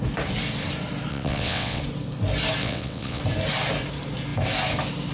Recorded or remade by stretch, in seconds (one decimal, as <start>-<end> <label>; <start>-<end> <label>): 0.0-1.1 recorded; 1.1-1.8 remade; 1.8-2.6 recorded; 2.6-3.2 remade; 3.2-5.1 recorded